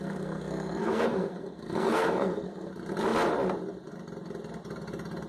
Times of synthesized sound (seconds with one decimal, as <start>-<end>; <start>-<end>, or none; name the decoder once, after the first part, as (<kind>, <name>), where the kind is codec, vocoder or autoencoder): 0.0-2.7 (codec, SNAC)